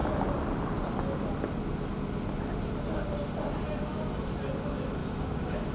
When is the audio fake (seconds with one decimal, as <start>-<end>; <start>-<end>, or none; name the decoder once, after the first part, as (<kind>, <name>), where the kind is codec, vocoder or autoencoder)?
5.0-5.7 (codec, DAC)